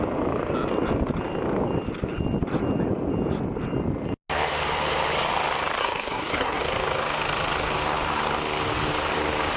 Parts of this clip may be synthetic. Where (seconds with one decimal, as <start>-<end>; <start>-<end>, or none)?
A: 5.8-6.6